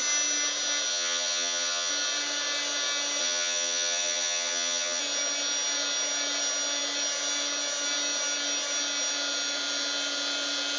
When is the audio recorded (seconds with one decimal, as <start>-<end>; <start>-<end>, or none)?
0.0-0.9; 1.9-3.2; 5.0-10.8